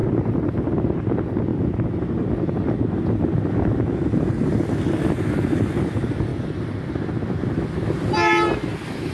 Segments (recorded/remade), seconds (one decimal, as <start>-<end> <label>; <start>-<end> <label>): 0.0-1.0 remade; 1.0-6.3 recorded; 6.3-7.1 remade; 7.1-9.1 recorded